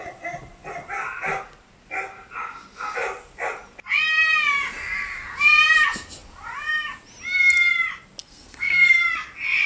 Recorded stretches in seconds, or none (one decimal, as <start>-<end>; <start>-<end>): 0.0-8.2; 9.0-9.7